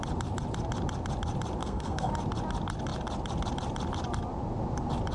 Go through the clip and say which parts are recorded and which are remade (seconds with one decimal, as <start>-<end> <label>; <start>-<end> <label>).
0.0-1.6 recorded; 1.6-2.1 remade; 2.1-5.1 recorded